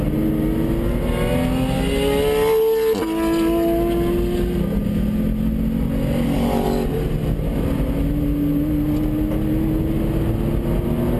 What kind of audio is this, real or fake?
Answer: real